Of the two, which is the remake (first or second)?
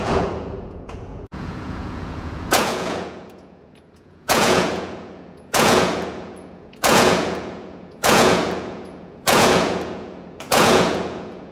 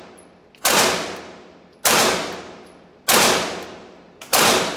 first